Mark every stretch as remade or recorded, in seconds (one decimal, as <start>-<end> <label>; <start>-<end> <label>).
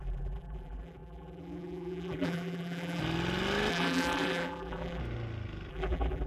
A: 0.0-3.0 remade; 3.0-3.7 recorded; 3.7-5.0 remade; 5.0-5.7 recorded; 5.7-6.3 remade